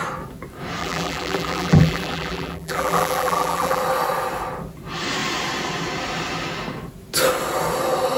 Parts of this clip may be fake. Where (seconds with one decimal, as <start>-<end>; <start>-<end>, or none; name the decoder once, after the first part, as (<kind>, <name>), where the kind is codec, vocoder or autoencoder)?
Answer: 0.8-3.8 (vocoder, BigVGAN v2)